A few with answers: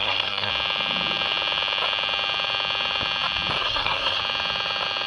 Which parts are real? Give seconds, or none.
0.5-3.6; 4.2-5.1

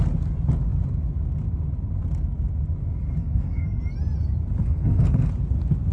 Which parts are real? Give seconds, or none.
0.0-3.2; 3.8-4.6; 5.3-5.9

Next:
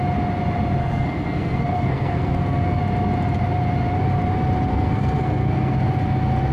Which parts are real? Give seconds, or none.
0.0-0.8; 2.8-4.7; 5.9-6.5

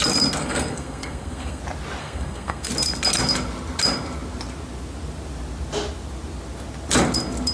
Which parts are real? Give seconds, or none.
0.0-0.4; 1.6-2.0; 2.7-7.5

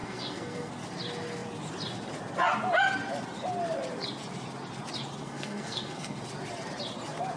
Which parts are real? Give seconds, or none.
0.7-5.2; 6.2-7.4